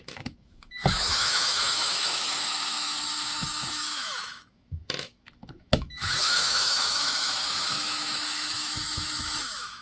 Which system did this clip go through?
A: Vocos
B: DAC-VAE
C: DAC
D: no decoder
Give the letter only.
B